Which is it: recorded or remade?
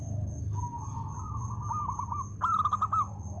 recorded